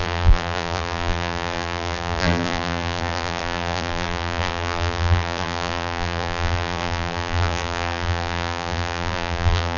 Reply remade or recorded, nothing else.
remade